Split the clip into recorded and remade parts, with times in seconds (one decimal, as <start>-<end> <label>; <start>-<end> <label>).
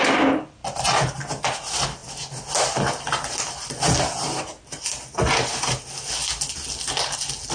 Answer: 0.0-7.5 recorded